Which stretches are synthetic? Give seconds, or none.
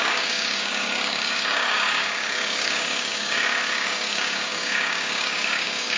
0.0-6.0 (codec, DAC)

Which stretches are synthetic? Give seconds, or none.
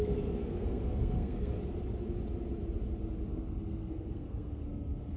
0.0-1.6 (codec, SNAC); 3.3-5.2